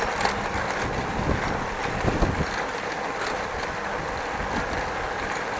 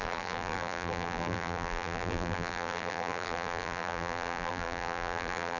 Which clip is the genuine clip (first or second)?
first